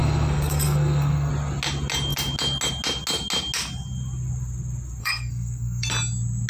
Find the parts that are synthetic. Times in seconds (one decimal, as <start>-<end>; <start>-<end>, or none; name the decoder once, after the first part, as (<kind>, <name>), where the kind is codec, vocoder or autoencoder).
0.0-1.3 (codec, SNAC); 5.0-5.9